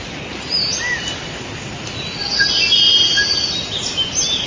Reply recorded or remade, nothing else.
recorded